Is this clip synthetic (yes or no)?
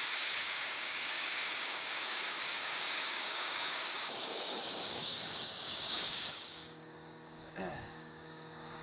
yes